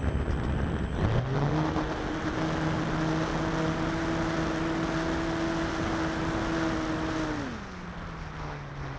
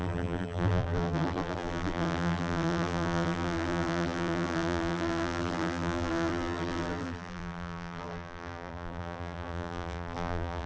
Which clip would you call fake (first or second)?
second